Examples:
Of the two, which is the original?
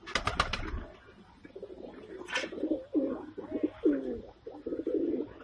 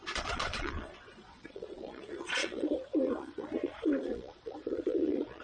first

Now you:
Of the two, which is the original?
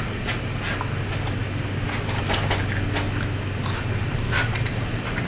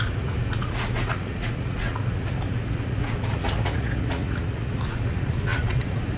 first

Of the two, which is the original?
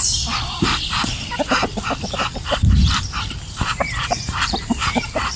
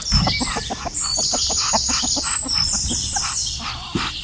second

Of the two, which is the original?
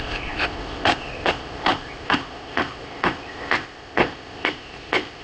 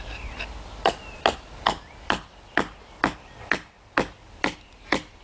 second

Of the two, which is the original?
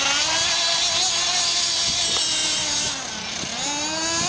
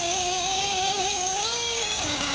first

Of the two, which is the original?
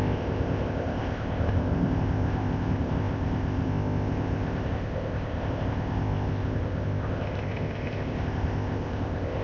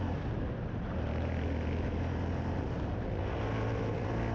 second